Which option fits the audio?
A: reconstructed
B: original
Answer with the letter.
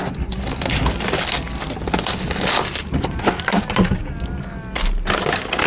B